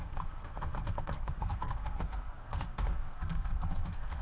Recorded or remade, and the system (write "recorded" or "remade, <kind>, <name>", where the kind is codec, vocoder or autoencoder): remade, codec, SNAC